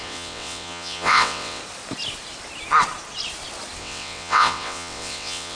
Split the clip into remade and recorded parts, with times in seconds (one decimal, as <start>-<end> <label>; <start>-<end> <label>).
0.0-1.6 remade; 1.6-3.8 recorded; 3.8-5.6 remade